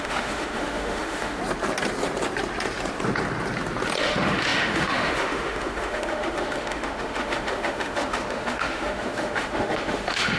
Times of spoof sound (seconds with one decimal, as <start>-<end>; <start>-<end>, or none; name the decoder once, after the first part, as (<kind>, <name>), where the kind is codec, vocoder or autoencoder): 0.0-1.4 (autoencoder, DAC-VAE); 4.0-10.4